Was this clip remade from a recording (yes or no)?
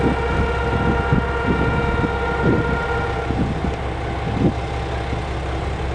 no